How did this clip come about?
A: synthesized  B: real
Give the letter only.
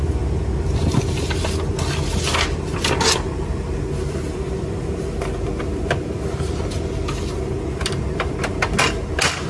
B